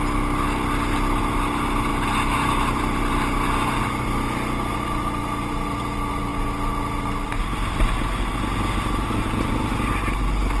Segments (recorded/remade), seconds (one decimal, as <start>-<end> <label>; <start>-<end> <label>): 0.0-10.6 recorded